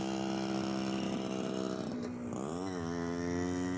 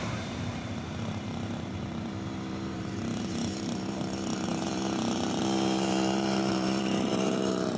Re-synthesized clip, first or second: second